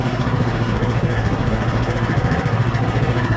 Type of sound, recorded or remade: remade